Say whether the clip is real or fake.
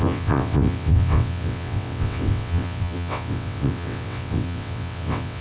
fake